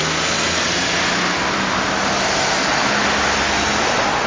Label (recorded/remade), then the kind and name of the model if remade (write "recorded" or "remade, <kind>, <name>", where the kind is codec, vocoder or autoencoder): recorded